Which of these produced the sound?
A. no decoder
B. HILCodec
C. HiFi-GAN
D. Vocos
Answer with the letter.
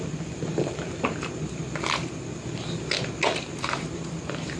A